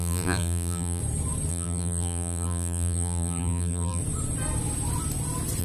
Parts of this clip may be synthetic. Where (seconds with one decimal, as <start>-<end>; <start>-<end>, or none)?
0.0-1.0; 1.5-4.0

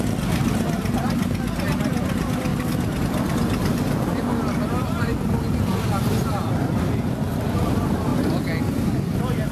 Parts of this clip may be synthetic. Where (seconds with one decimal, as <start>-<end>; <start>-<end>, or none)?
0.0-8.1

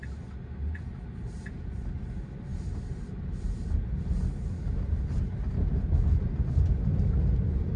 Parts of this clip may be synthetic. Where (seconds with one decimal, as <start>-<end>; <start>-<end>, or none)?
2.5-3.4

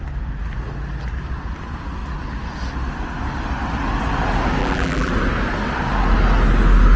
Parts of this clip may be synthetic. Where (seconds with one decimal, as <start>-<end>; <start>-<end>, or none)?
4.6-5.1

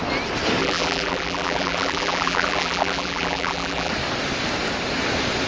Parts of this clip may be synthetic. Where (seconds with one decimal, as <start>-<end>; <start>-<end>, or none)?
0.6-3.9

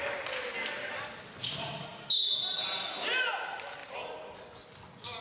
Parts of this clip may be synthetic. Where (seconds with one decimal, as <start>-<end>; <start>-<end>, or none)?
3.8-4.5

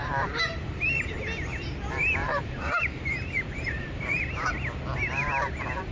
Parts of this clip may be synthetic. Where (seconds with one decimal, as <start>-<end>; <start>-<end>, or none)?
0.0-1.2; 2.2-4.5